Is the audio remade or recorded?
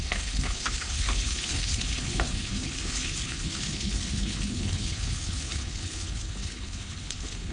remade